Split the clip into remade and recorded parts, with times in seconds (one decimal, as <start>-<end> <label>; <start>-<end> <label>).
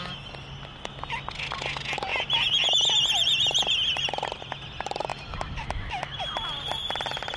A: 0.0-5.1 recorded; 5.1-5.6 remade; 5.6-7.4 recorded